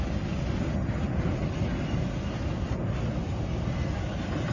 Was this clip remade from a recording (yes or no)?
no